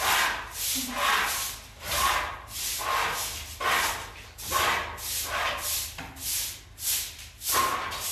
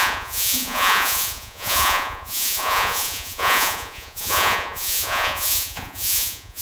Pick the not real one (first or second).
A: second